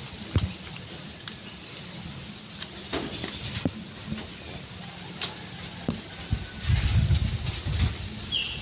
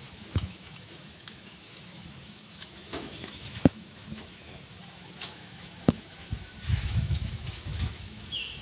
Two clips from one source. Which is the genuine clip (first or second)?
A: first